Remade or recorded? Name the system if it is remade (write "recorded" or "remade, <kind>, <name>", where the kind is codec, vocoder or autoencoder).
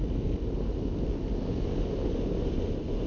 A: recorded